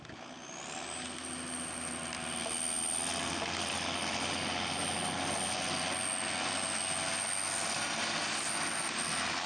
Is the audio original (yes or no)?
yes